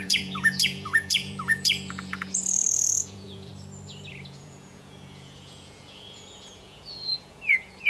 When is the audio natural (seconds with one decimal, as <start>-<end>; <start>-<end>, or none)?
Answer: 3.5-4.1